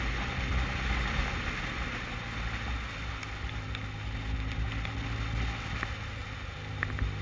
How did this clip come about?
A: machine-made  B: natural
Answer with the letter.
B